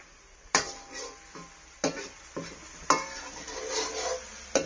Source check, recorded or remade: recorded